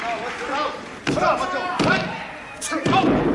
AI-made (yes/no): no